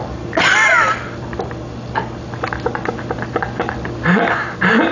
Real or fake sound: real